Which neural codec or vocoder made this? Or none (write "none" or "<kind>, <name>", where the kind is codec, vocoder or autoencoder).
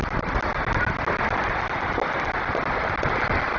none